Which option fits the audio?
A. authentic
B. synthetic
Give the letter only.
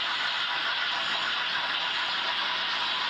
A